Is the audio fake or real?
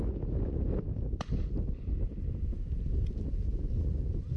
fake